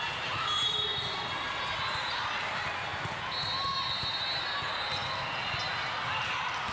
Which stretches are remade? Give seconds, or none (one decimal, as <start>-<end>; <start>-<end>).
none